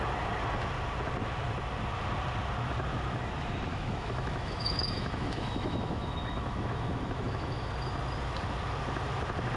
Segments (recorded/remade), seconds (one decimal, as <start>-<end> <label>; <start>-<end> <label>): 0.0-3.7 recorded; 3.7-7.7 remade; 7.7-9.6 recorded